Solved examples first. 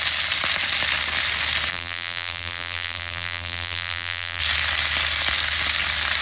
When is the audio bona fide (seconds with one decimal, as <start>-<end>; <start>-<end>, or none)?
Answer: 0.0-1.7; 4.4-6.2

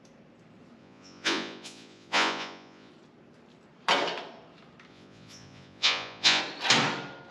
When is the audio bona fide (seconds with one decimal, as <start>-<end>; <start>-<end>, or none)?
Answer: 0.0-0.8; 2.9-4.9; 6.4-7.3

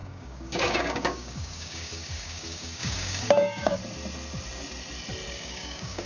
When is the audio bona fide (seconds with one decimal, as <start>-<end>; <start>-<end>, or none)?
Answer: 3.8-5.3

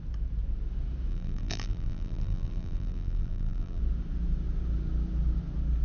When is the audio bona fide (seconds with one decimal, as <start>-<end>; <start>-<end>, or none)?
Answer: 0.0-1.1; 3.8-5.8

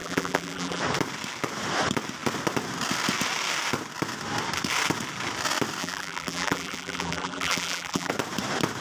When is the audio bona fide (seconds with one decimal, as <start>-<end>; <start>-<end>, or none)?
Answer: 0.8-5.8; 8.1-8.8